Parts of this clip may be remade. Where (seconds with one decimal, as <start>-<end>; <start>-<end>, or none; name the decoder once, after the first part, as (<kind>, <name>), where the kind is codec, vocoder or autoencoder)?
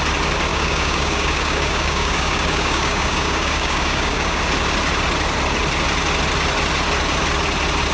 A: 0.5-4.4 (codec, DAC)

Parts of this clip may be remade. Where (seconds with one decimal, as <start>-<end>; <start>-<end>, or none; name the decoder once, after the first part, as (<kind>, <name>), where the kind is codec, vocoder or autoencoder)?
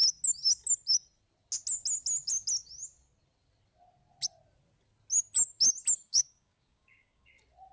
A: 6.1-7.3 (codec, DAC)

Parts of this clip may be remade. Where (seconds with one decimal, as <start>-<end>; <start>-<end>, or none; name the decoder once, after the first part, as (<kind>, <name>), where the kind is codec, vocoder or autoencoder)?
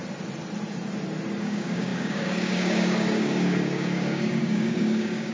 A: 1.4-5.3 (codec, DAC)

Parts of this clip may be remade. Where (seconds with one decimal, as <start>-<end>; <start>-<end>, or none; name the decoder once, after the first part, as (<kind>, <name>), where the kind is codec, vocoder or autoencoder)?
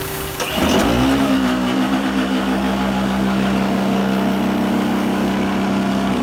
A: 0.0-0.6 (codec, DAC); 1.2-4.0; 4.7-6.2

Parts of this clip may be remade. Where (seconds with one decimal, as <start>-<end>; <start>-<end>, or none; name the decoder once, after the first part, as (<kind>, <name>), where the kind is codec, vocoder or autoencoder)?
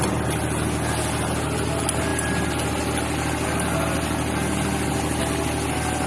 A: none